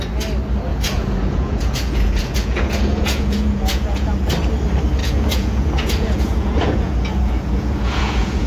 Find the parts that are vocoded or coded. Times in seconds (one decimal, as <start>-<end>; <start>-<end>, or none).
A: 0.7-4.3; 5.0-8.5